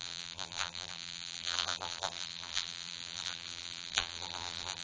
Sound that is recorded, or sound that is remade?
remade